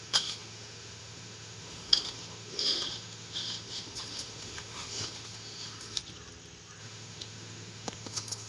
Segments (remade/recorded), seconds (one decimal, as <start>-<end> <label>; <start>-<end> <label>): 0.0-6.0 remade; 6.0-6.8 recorded; 6.8-8.5 remade